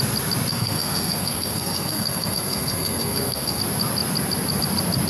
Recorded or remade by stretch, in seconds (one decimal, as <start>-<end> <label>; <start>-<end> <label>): 0.0-0.5 recorded; 0.5-3.6 remade; 3.6-5.1 recorded

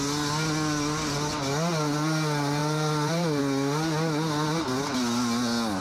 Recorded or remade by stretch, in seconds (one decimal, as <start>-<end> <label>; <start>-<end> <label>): 0.0-2.6 recorded; 2.6-3.4 remade; 3.4-5.8 recorded

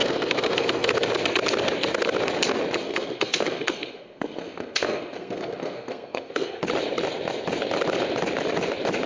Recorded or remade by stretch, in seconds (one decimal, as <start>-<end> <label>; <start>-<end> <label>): 0.0-0.9 remade; 0.9-2.8 recorded; 2.8-6.6 remade; 6.6-9.1 recorded